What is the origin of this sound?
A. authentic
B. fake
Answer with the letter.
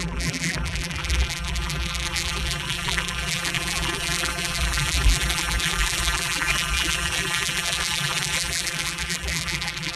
B